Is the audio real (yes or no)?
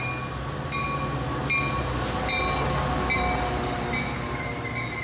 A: yes